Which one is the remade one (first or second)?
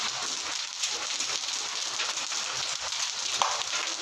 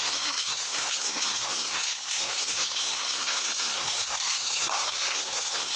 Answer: second